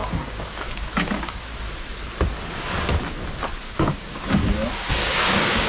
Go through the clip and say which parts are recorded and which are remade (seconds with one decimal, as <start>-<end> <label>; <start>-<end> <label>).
0.0-1.5 remade; 1.5-3.6 recorded; 3.6-4.4 remade; 4.4-4.9 recorded; 4.9-5.7 remade